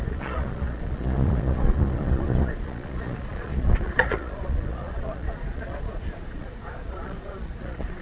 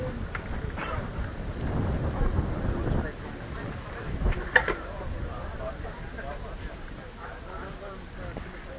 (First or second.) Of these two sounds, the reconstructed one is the first